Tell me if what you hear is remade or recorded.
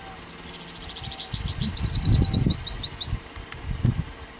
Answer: recorded